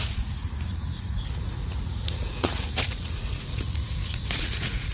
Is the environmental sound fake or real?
fake